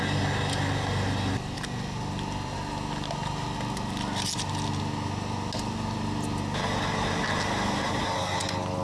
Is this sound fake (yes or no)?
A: no